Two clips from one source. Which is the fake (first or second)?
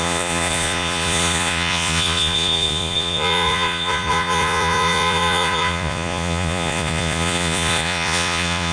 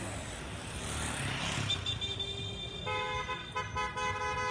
first